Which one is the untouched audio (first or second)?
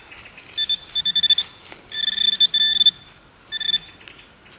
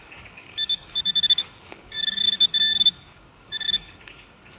first